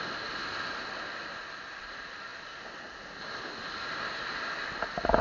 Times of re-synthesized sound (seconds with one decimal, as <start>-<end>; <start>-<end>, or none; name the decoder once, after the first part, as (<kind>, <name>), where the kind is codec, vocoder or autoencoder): none